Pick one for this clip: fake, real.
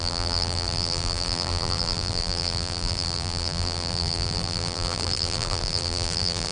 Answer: fake